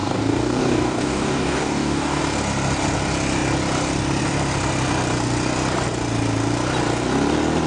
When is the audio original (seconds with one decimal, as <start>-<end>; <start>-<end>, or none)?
2.2-7.7